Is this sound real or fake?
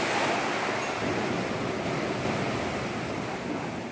real